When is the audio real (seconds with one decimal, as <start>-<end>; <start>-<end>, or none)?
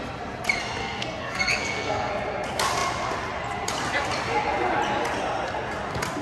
0.0-0.8; 2.1-6.2